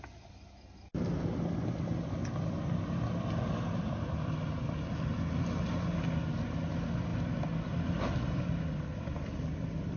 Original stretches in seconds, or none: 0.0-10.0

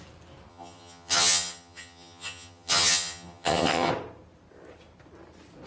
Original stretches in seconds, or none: 0.0-0.5; 3.9-5.7

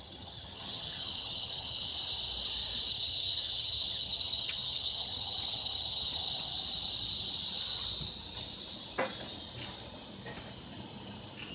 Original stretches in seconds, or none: 1.9-2.9; 6.5-11.5

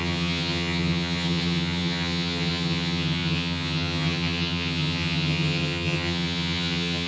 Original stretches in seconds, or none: none